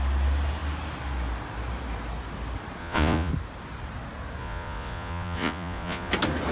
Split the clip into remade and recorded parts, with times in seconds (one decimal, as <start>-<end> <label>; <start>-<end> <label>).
0.0-2.8 recorded; 2.8-3.3 remade; 3.3-4.4 recorded; 4.4-6.1 remade; 6.1-6.5 recorded